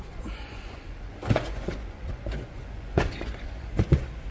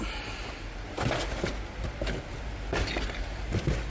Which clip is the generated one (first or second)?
first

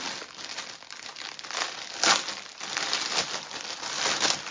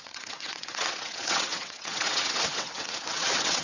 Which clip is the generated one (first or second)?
second